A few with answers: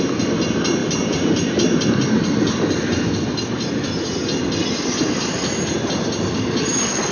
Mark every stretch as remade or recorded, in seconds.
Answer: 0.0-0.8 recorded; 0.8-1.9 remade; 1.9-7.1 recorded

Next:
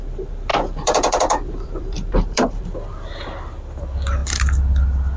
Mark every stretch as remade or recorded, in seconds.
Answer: 0.0-0.5 recorded; 0.5-2.7 remade; 2.7-5.2 recorded

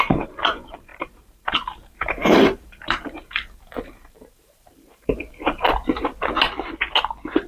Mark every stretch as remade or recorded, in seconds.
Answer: 0.0-6.1 remade; 6.1-7.5 recorded

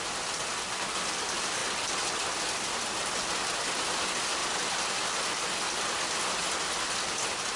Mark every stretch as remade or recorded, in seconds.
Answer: 0.0-7.6 recorded